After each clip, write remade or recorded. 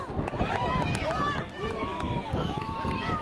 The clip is remade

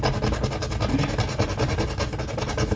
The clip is recorded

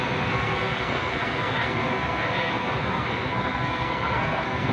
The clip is remade